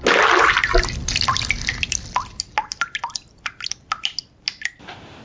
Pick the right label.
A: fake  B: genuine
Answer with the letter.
B